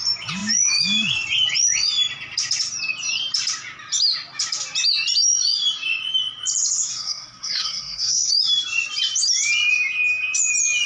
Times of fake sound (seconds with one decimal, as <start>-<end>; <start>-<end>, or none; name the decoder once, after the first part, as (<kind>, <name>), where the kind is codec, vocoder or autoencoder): 6.9-8.3 (codec, SNAC)